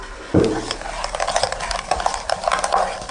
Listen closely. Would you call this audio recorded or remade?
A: recorded